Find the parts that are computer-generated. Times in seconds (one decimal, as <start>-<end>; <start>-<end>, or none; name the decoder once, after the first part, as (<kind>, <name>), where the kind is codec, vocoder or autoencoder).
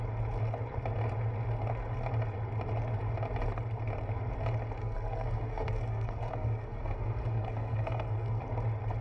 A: 4.8-8.4 (codec, SNAC)